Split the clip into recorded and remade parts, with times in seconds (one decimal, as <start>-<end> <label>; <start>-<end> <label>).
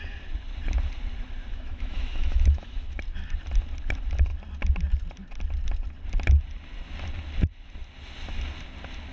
0.0-1.5 recorded; 1.5-3.0 remade; 3.0-9.1 recorded